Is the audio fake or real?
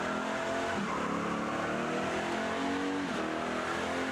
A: real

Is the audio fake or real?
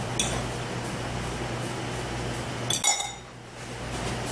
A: real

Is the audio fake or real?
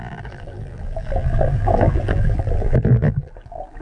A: fake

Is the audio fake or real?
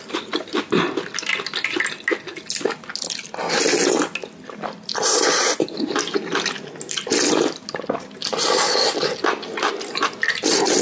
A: real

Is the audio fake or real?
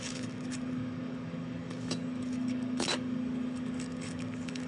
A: fake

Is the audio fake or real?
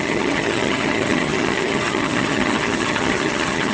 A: fake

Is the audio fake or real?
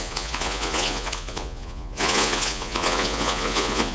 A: fake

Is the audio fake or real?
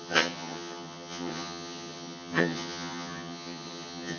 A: fake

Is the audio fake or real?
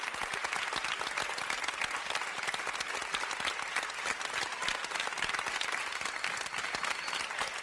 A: real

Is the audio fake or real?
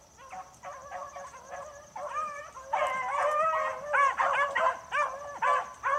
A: real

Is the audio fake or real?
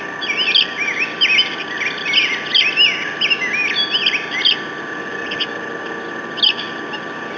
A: real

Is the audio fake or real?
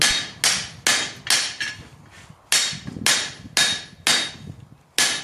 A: real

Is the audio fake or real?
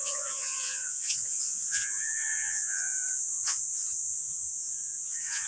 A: fake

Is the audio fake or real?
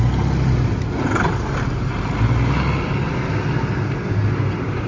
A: real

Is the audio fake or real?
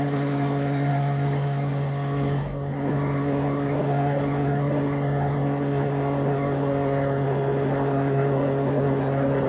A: fake